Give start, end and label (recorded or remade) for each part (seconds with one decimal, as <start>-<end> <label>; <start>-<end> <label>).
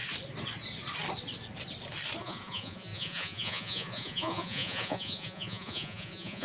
0.0-2.2 recorded; 2.2-6.4 remade